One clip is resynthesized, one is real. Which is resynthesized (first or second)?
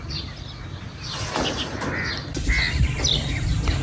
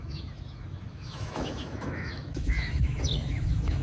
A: second